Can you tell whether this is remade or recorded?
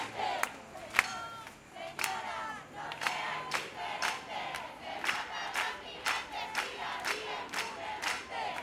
recorded